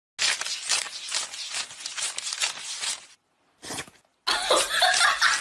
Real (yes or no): yes